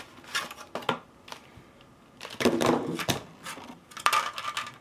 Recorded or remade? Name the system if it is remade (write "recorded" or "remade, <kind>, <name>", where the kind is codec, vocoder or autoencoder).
recorded